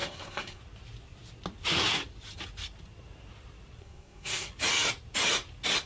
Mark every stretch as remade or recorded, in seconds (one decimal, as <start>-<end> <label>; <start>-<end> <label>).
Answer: 0.0-0.6 remade; 0.6-3.8 recorded; 3.8-4.5 remade; 4.5-5.9 recorded